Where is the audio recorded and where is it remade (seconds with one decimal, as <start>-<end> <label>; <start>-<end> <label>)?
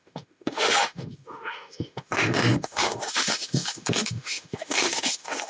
0.0-5.5 remade